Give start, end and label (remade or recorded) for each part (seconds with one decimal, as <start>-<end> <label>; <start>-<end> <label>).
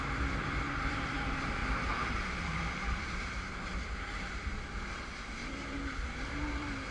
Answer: 0.0-6.9 remade